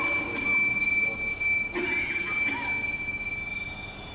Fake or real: real